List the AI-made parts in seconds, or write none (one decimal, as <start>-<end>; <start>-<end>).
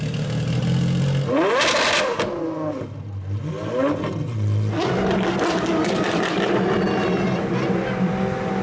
none